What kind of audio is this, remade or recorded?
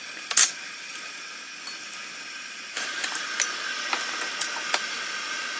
recorded